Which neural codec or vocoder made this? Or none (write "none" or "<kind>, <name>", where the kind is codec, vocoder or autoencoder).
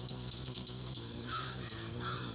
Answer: codec, SNAC